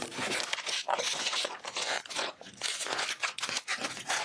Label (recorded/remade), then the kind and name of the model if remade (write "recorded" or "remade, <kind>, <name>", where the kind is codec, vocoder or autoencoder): remade, vocoder, Vocos